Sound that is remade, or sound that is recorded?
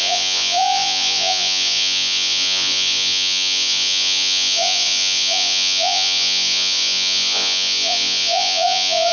remade